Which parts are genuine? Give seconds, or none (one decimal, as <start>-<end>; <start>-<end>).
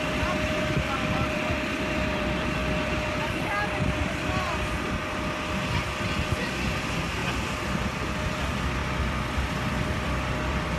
2.6-6.8; 7.2-8.4